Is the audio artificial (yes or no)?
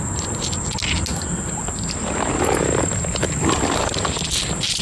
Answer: no